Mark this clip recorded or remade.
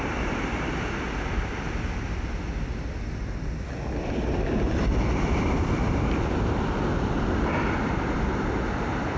recorded